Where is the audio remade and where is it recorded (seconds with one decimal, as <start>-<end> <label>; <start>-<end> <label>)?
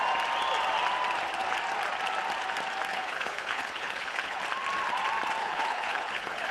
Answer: 0.0-2.9 recorded; 2.9-4.4 remade; 4.4-5.4 recorded; 5.4-6.5 remade